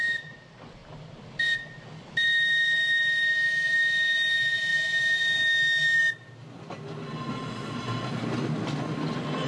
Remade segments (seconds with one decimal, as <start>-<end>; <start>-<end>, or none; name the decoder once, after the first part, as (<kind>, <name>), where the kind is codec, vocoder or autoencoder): none